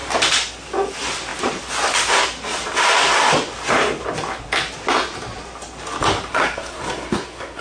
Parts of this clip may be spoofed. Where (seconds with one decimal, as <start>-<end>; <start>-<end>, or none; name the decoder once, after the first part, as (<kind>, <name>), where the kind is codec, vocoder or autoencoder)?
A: 6.3-7.6 (codec, SNAC)